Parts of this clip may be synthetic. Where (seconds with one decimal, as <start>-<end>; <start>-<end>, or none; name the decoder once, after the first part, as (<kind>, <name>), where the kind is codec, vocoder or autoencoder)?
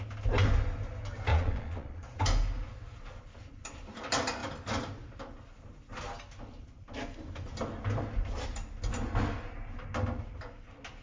1.3-2.2 (vocoder, Vocos)